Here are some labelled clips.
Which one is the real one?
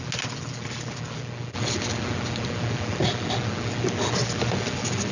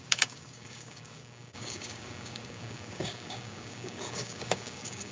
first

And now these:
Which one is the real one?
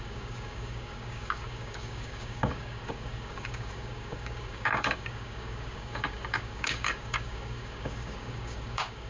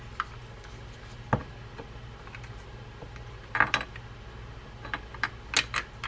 second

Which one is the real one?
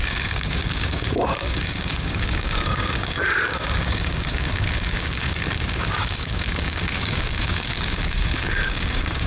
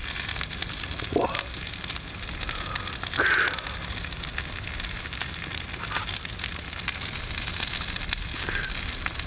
second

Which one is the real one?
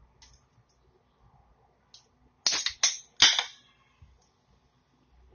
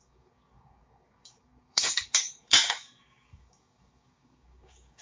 first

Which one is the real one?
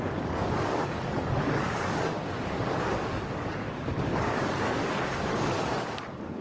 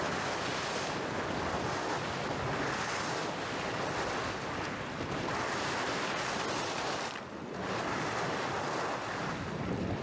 second